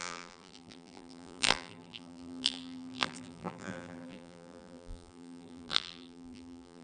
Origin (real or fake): fake